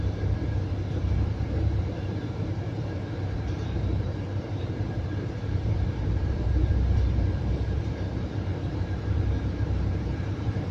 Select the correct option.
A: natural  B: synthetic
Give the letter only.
B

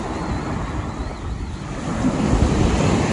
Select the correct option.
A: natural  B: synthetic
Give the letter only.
A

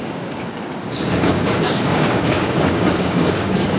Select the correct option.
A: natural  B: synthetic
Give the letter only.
B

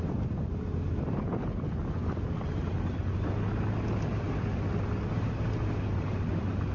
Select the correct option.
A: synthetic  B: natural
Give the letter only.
B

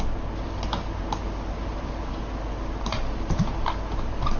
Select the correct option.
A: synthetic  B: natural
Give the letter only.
B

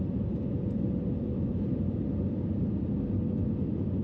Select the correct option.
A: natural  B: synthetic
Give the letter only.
A